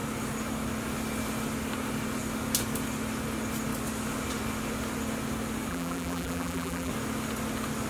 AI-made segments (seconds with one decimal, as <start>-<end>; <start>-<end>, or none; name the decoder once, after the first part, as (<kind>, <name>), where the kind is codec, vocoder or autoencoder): 5.7-6.9 (vocoder, BigVGAN v2)